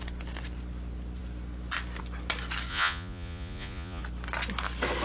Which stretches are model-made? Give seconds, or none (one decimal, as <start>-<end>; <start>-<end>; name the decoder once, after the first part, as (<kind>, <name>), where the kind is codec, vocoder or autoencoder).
2.7-4.0 (vocoder, Vocos)

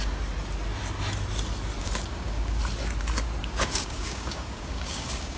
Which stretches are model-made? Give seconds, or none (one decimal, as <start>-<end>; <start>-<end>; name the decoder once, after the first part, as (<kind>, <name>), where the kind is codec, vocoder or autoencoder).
1.8-2.6 (codec, DAC); 3.4-5.4